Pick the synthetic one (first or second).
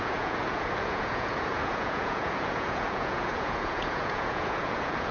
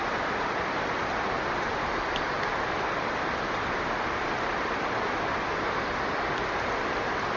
first